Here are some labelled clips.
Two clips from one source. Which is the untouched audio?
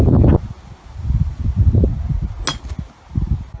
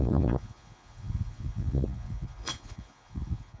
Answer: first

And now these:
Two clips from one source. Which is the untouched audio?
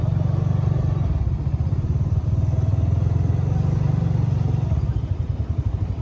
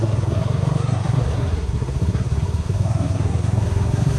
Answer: first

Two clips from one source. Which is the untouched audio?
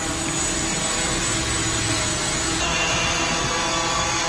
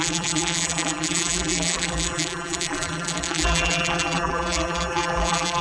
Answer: first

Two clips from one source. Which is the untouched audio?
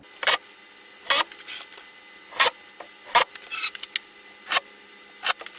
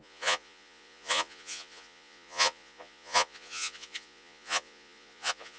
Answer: first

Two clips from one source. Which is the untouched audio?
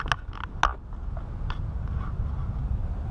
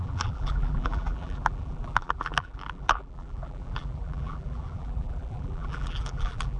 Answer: first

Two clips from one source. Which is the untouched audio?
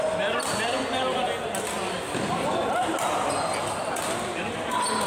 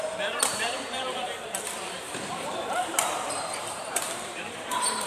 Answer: first